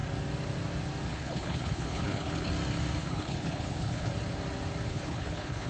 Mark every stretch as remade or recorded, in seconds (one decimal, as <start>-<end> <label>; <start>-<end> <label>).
0.0-1.1 recorded; 1.1-2.5 remade; 2.5-3.0 recorded; 3.0-4.1 remade; 4.1-4.9 recorded; 4.9-5.7 remade